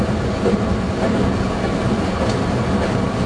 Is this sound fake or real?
real